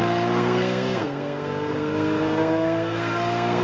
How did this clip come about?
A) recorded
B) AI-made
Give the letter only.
B